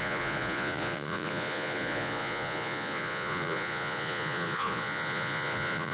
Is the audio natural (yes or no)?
no